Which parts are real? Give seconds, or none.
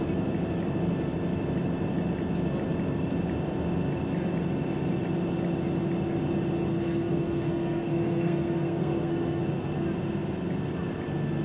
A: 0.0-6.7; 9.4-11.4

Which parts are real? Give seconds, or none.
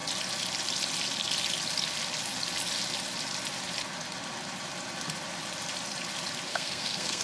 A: 0.0-6.5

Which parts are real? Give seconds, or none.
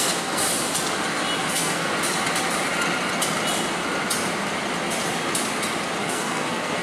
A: 0.4-1.4; 1.9-6.0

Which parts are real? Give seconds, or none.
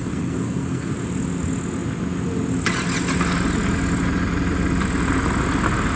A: 0.9-6.0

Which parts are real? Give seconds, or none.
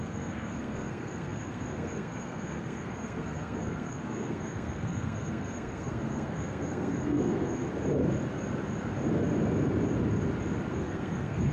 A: 7.6-10.7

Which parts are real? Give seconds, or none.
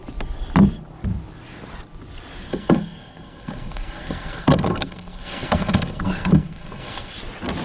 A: 0.0-2.5; 7.1-7.6